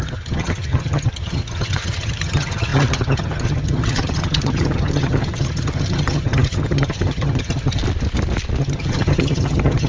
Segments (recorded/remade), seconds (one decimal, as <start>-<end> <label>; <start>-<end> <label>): 0.0-7.8 remade; 7.8-8.6 recorded; 8.6-9.9 remade